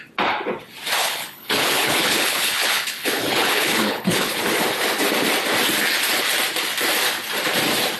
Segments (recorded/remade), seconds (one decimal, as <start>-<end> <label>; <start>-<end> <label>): 0.0-1.0 recorded; 1.0-4.4 remade; 4.4-8.0 recorded

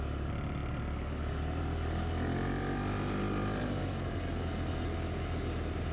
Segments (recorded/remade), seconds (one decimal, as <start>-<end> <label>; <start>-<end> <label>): 0.0-5.9 recorded

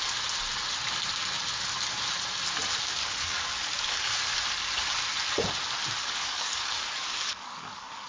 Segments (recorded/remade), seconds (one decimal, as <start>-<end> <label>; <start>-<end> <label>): 0.0-3.0 recorded; 3.0-4.1 remade; 4.1-6.0 recorded; 6.0-8.1 remade

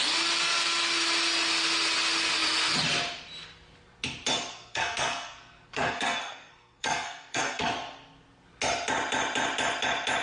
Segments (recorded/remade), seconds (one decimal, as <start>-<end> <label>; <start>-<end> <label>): 0.0-4.5 recorded; 4.5-7.7 remade; 7.7-10.2 recorded